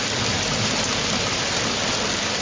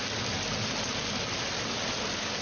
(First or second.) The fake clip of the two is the first